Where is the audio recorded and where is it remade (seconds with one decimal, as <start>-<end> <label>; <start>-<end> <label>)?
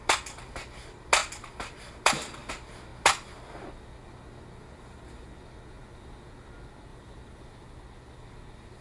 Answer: 0.0-5.8 recorded; 5.8-6.3 remade; 6.3-6.9 recorded; 6.9-7.7 remade; 7.7-8.8 recorded